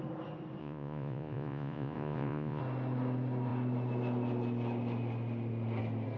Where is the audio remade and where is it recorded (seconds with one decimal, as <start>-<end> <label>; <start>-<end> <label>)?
0.0-0.6 recorded; 0.6-2.6 remade; 2.6-6.2 recorded